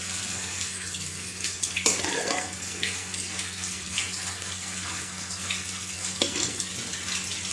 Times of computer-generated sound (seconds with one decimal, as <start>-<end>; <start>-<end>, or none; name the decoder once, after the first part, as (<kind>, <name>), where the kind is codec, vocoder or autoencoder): 0.0-6.7 (codec, SNAC)